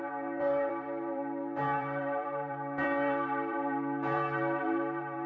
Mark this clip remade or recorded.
remade